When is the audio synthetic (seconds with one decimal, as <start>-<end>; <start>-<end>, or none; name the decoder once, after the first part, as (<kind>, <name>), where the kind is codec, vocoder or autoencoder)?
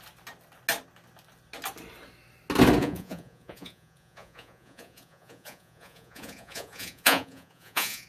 2.8-8.1 (vocoder, Vocos)